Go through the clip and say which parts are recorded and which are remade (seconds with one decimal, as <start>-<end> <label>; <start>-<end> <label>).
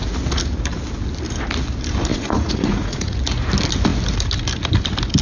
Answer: 0.0-2.1 recorded; 2.1-3.2 remade; 3.2-5.2 recorded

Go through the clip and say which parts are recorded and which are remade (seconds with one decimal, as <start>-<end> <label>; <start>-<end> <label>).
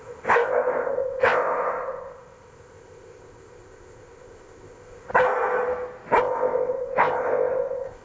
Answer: 0.0-5.1 remade; 5.1-6.2 recorded; 6.2-8.0 remade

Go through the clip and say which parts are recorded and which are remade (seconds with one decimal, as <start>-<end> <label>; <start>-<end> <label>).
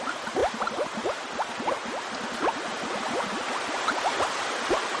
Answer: 0.0-5.0 recorded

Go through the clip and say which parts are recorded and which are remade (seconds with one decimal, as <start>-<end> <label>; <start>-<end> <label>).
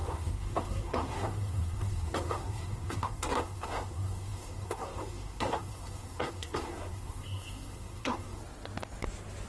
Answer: 0.0-8.4 remade; 8.4-9.5 recorded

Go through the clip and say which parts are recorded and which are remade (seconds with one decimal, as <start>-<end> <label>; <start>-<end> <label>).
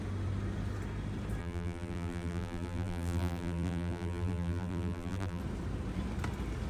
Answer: 0.0-1.4 recorded; 1.4-5.4 remade; 5.4-6.7 recorded